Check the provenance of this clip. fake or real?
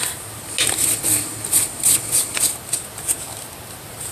real